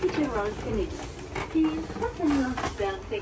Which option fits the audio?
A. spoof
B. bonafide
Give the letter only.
B